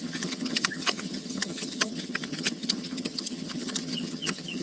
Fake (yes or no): yes